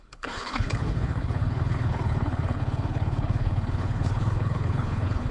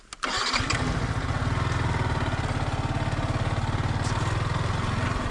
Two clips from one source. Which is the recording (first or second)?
second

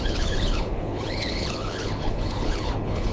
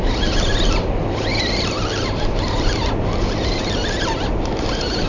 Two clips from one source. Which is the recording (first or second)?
second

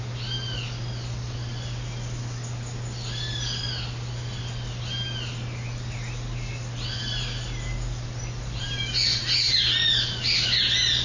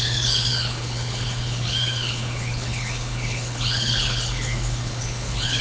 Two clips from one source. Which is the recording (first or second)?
first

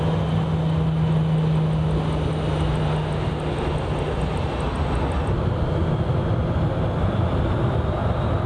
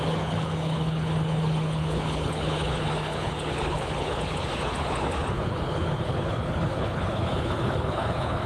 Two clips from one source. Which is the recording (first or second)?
first